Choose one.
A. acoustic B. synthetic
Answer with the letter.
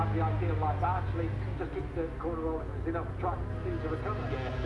A